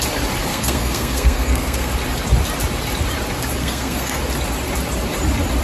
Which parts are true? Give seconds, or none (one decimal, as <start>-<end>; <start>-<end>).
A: 0.0-0.5; 1.9-3.6; 4.2-5.6